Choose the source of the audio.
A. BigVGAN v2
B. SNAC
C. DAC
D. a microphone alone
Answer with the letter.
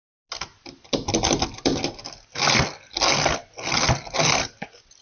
D